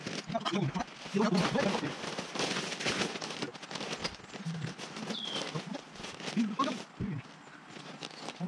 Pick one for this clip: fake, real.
real